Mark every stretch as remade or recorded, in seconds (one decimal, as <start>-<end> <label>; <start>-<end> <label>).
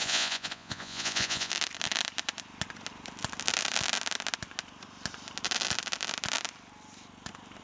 0.0-1.5 remade; 1.5-7.6 recorded